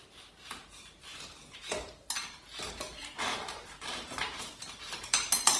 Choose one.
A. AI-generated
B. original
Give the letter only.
A